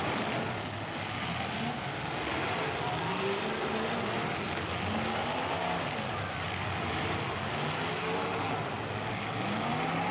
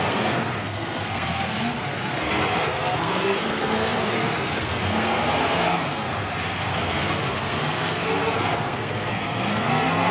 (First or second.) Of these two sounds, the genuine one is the first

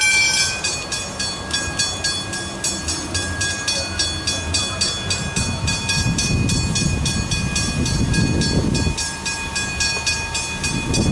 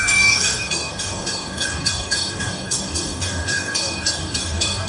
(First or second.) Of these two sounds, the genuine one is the first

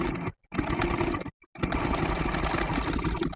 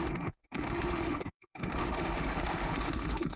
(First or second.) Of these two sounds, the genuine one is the first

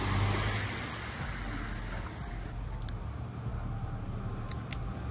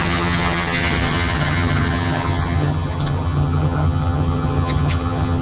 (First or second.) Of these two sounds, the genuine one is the first